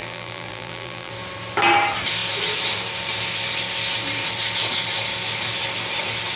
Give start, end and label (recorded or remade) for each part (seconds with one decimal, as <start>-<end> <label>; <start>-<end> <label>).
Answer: 0.0-1.1 remade; 1.1-6.4 recorded